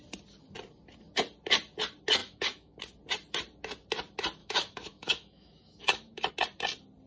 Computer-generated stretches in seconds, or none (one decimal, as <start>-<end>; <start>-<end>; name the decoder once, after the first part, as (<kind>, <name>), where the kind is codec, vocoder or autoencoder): 2.2-2.8 (autoencoder, DAC-VAE); 4.4-6.3